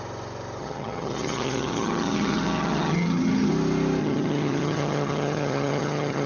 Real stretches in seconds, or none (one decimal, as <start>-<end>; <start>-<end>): 0.0-0.6; 3.5-4.0